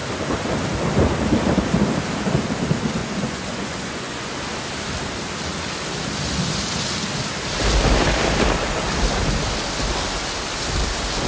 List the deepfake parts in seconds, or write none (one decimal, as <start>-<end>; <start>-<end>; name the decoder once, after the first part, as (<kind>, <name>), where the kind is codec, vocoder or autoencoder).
3.0-4.3 (vocoder, Vocos)

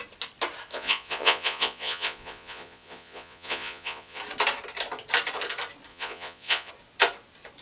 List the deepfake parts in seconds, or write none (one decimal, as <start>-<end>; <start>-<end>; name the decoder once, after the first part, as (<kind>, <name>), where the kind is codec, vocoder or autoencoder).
0.7-4.2 (vocoder, Vocos); 5.9-6.7

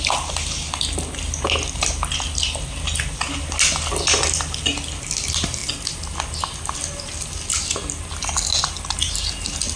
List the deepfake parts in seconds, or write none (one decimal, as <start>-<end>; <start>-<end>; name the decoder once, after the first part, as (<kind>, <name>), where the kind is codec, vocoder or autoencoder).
none

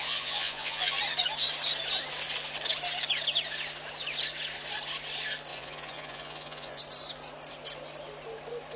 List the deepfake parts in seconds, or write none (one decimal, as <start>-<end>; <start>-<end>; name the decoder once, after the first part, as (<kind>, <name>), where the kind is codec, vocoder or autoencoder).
0.0-1.0 (vocoder, Vocos); 5.5-6.8

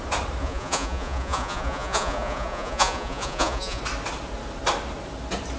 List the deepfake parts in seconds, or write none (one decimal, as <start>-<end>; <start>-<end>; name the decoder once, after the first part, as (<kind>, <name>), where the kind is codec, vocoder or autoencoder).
0.4-3.8 (vocoder, Vocos)

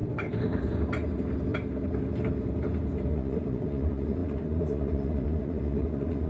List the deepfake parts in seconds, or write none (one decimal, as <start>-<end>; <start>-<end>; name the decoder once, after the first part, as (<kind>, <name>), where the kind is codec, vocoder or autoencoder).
3.1-6.3 (vocoder, Vocos)

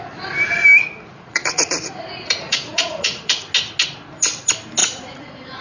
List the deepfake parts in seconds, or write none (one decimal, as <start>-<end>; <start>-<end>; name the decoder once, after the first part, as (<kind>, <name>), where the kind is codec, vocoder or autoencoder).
1.1-3.5 (vocoder, Vocos); 4.8-5.6

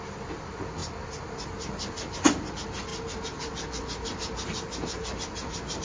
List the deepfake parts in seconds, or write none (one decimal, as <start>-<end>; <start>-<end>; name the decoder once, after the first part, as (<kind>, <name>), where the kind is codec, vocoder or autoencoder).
none